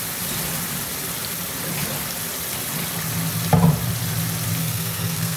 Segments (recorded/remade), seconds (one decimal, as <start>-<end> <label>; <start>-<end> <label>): 0.0-4.6 recorded; 4.6-5.4 remade